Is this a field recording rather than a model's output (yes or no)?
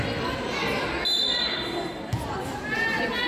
yes